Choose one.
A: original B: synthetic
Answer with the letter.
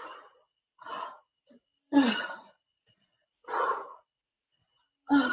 B